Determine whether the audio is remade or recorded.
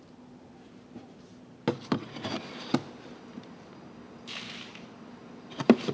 recorded